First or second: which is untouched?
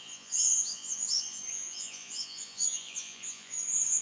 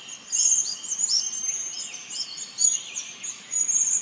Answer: second